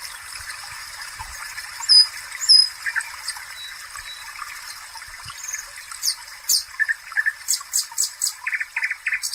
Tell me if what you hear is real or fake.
real